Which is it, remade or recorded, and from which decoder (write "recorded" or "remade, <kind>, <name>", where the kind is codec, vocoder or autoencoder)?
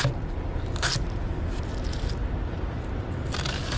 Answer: recorded